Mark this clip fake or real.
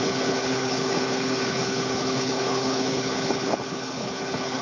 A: fake